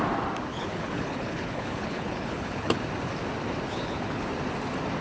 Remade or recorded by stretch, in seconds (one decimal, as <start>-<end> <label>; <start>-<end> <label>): 0.0-0.5 recorded; 0.5-2.8 remade; 2.8-3.7 recorded; 3.7-4.3 remade; 4.3-5.0 recorded

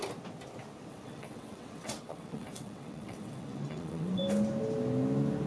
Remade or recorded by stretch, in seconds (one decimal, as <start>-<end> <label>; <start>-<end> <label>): 0.0-0.9 recorded; 0.9-4.2 remade; 4.2-5.5 recorded

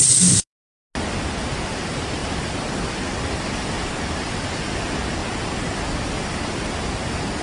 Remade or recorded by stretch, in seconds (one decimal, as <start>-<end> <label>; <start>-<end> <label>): 0.0-7.4 recorded

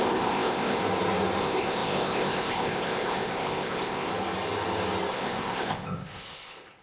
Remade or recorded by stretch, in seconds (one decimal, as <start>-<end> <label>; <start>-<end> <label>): 0.0-0.8 remade; 0.8-1.4 recorded; 1.4-4.1 remade; 4.1-5.1 recorded; 5.1-6.8 remade

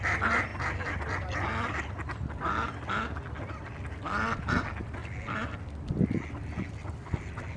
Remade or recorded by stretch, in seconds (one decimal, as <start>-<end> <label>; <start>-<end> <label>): 0.0-7.6 recorded

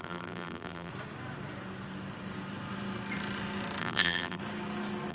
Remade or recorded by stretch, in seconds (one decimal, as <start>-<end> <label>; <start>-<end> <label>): 0.0-0.9 remade; 0.9-3.8 recorded; 3.8-4.4 remade; 4.4-5.1 recorded

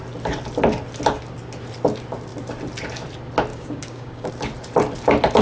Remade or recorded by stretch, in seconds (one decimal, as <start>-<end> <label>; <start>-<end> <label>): 0.0-3.5 recorded; 3.5-4.3 remade; 4.3-5.4 recorded